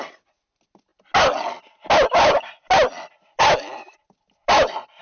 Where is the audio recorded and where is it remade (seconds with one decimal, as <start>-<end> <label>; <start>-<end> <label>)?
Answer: 0.0-5.0 recorded